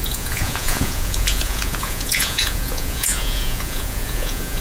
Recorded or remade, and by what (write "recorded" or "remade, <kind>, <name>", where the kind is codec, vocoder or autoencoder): remade, vocoder, Vocos